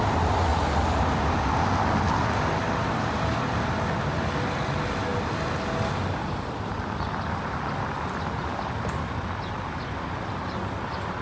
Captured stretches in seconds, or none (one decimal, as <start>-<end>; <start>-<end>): 0.0-11.2